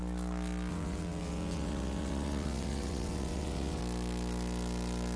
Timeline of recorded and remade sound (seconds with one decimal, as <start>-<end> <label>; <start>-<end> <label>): 0.0-0.7 recorded; 0.7-3.8 remade; 3.8-5.2 recorded